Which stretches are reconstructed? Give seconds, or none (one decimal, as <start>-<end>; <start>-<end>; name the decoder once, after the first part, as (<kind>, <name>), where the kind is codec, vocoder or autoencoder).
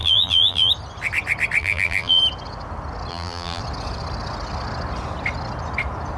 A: 0.0-0.7 (vocoder, BigVGAN v2); 1.6-2.2; 3.1-3.6